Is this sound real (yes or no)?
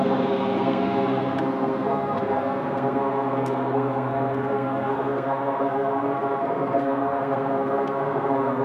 no